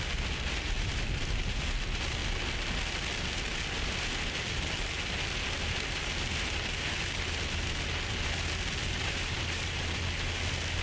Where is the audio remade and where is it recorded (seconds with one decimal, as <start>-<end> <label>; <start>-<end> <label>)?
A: 0.0-8.8 recorded; 8.8-10.0 remade; 10.0-10.8 recorded